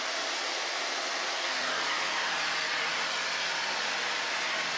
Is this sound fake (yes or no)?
no